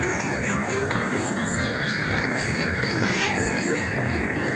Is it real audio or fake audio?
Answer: fake